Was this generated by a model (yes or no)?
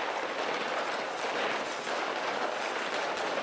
no